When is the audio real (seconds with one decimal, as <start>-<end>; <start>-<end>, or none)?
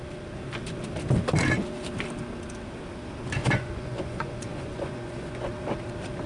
0.0-3.4; 5.5-6.3